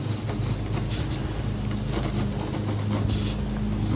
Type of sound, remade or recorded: recorded